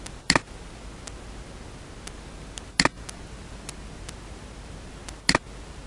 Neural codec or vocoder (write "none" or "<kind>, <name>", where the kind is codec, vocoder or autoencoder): none